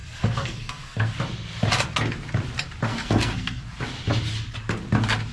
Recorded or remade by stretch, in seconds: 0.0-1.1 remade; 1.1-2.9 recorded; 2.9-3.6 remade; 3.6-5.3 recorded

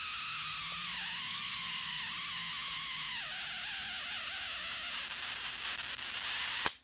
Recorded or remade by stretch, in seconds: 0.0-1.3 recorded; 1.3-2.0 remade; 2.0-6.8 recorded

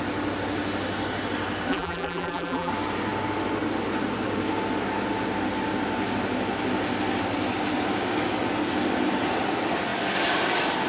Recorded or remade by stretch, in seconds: 0.0-1.7 recorded; 1.7-2.7 remade; 2.7-10.9 recorded

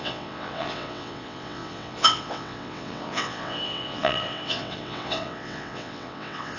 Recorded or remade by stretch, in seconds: 0.0-6.6 remade